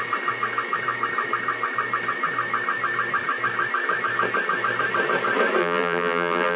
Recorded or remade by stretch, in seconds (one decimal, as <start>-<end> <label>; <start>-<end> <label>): 0.0-5.6 recorded; 5.6-6.6 remade

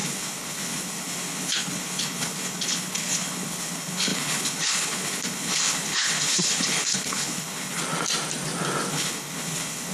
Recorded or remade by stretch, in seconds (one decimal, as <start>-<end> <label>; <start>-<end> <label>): 0.0-7.8 remade; 7.8-8.9 recorded; 8.9-9.9 remade

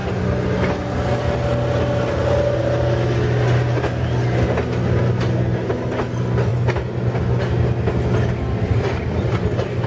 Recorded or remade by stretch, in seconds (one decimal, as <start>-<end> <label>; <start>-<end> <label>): 0.0-9.9 recorded

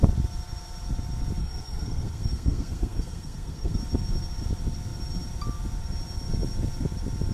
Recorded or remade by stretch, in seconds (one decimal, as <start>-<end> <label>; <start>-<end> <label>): 0.0-1.4 recorded; 1.4-3.8 remade; 3.8-7.3 recorded